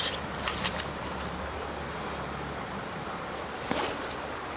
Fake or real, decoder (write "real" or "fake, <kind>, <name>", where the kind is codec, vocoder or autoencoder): real